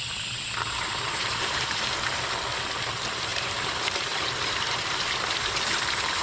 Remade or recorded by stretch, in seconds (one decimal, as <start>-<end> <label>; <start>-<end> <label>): 0.0-0.9 recorded; 0.9-1.8 remade; 1.8-3.3 recorded; 3.3-6.2 remade